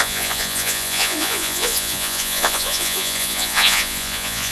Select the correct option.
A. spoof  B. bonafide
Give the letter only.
A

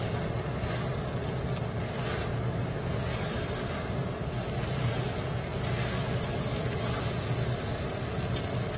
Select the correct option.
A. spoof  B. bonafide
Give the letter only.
B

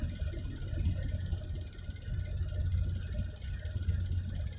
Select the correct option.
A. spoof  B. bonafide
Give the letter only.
B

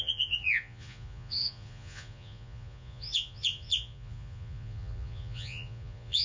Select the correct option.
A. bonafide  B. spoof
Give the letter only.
B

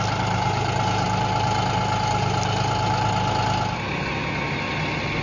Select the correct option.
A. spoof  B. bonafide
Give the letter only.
B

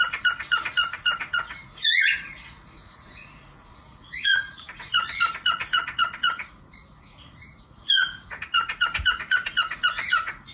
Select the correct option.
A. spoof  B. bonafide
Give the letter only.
A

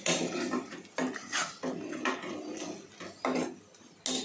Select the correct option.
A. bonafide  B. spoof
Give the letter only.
A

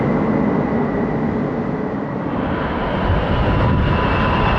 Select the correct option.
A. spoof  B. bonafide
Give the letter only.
B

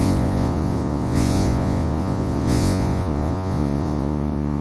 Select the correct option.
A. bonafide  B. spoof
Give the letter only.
B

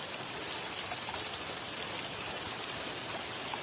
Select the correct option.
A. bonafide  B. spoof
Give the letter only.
A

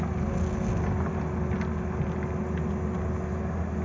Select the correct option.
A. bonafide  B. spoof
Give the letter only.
A